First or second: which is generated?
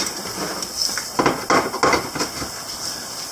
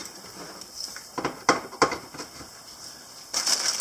second